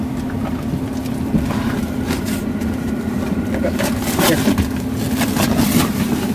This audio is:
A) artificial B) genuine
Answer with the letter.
A